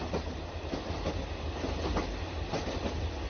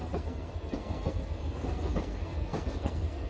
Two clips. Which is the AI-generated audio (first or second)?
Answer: second